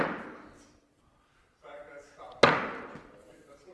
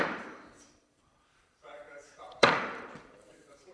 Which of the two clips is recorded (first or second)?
first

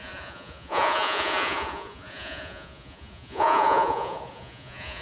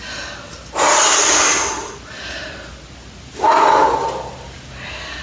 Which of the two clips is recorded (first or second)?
second